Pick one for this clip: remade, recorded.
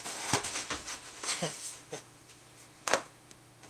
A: remade